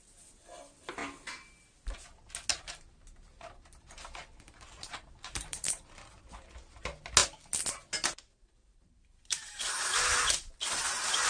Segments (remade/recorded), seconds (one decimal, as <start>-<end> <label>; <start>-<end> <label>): 0.0-2.5 recorded; 2.5-5.8 remade; 5.8-8.4 recorded; 8.4-9.6 remade; 9.6-11.3 recorded